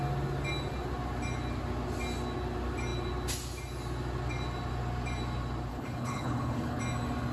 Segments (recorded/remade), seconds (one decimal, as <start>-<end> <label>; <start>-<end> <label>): 0.0-5.7 recorded; 5.7-6.8 remade; 6.8-7.3 recorded